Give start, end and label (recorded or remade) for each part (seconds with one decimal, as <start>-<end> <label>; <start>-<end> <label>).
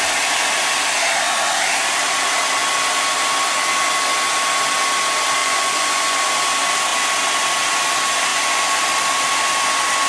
0.0-5.4 recorded; 5.4-6.2 remade; 6.2-8.3 recorded; 8.3-8.8 remade; 8.8-10.1 recorded